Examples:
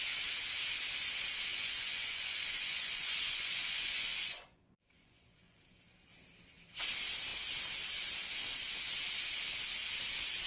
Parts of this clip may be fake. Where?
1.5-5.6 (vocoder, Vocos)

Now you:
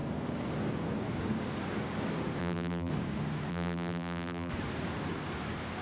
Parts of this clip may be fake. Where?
2.4-2.9 (vocoder, BigVGAN v2); 3.5-4.5

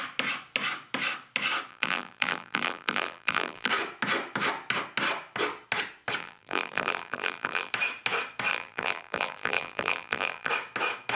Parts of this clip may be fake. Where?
1.7-3.7 (vocoder, BigVGAN v2); 6.2-7.7; 8.5-10.5

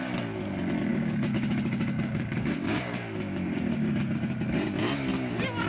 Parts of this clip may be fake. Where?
0.9-4.3 (codec, DAC)

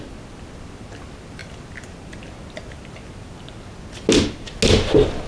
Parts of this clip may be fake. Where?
none

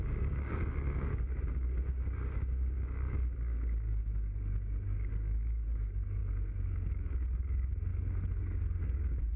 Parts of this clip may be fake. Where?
0.0-7.9 (codec, DAC); 8.4-9.4

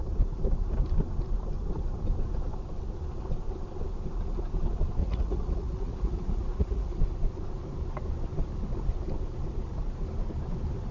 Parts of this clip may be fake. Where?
5.0-7.0 (vocoder, Vocos)

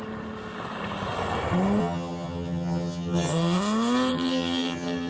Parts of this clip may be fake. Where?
1.8-3.6 (vocoder, HiFi-GAN); 4.1-5.1